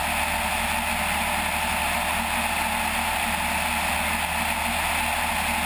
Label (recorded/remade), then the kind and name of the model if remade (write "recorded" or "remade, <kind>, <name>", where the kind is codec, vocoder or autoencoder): recorded